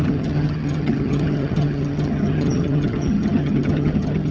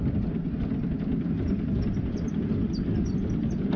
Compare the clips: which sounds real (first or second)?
second